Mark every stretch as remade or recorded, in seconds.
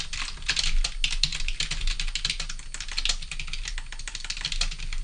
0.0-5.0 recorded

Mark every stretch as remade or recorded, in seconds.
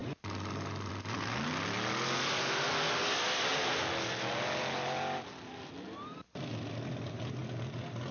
0.0-8.1 recorded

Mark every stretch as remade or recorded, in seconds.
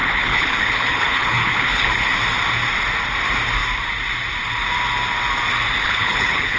0.0-2.1 remade; 2.1-5.8 recorded; 5.8-6.6 remade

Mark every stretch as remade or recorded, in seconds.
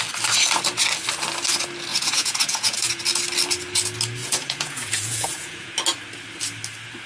0.0-1.9 recorded; 1.9-3.0 remade; 3.0-4.2 recorded; 4.2-5.7 remade; 5.7-7.1 recorded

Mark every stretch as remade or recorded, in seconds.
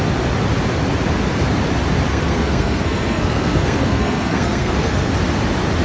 0.0-2.1 recorded; 2.1-5.1 remade; 5.1-5.8 recorded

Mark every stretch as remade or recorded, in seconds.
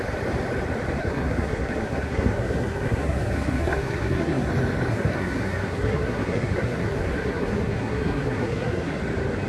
0.0-1.0 recorded; 1.0-4.5 remade; 4.5-4.9 recorded; 4.9-9.0 remade; 9.0-9.5 recorded